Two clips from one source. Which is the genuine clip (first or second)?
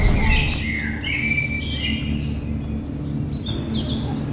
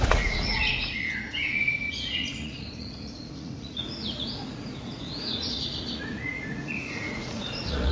first